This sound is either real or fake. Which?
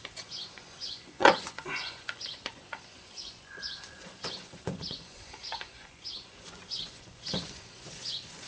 fake